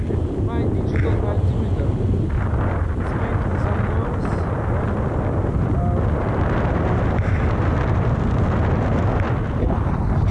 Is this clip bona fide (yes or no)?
yes